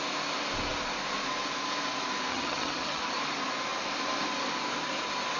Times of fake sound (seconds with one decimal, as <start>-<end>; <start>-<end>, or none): 2.3-3.0